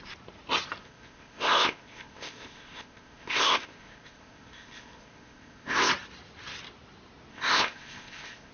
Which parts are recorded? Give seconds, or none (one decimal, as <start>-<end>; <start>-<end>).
0.0-0.8; 5.9-7.3